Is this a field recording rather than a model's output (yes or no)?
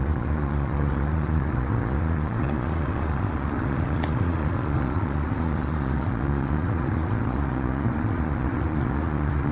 no